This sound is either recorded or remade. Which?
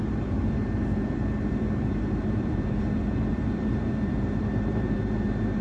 remade